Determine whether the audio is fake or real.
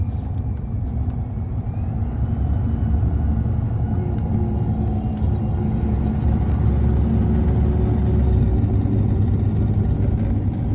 real